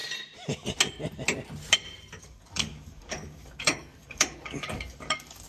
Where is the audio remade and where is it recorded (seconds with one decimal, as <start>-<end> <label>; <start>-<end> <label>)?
0.0-2.2 recorded; 2.2-5.5 remade